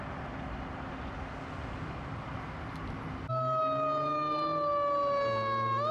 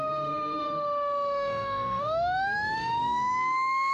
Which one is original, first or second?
first